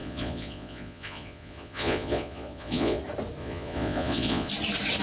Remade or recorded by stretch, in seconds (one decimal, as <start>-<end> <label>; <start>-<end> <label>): 0.0-3.0 remade; 3.0-3.4 recorded; 3.4-4.5 remade; 4.5-5.0 recorded